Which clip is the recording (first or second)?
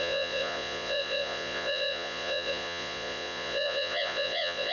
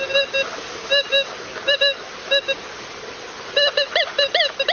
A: second